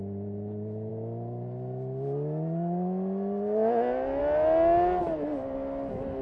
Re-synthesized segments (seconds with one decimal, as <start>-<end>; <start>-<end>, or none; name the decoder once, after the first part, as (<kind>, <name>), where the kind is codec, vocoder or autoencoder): none